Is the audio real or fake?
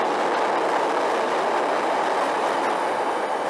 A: real